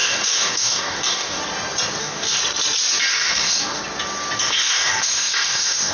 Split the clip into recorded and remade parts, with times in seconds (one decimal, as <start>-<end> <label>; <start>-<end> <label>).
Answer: 0.0-1.4 remade; 1.4-2.0 recorded; 2.0-2.4 remade; 2.4-3.1 recorded; 3.1-3.8 remade; 3.8-4.4 recorded; 4.4-5.9 remade